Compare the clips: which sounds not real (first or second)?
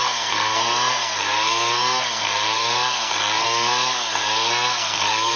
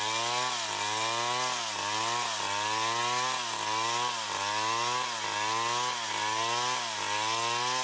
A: first